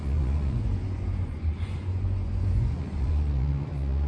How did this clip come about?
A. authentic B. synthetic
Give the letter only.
B